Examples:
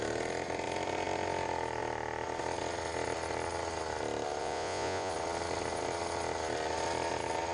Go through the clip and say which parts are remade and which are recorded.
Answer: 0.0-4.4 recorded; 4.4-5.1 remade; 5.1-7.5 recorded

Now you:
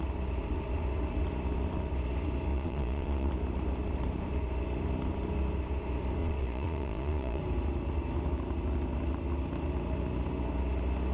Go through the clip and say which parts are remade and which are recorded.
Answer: 0.0-2.5 recorded; 2.5-3.3 remade; 3.3-6.2 recorded; 6.2-7.4 remade; 7.4-11.1 recorded